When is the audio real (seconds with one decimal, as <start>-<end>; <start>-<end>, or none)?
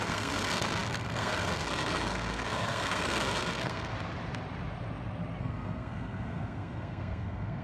3.9-5.4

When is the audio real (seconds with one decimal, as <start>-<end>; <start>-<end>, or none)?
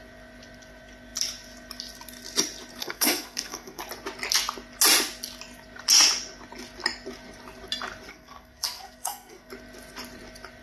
0.0-2.8; 3.8-8.1; 9.5-10.6